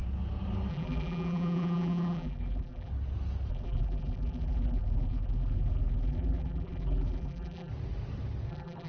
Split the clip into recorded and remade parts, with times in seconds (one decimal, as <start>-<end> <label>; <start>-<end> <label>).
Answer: 0.0-0.7 recorded; 0.7-2.9 remade; 2.9-3.5 recorded; 3.5-7.7 remade; 7.7-8.5 recorded; 8.5-8.9 remade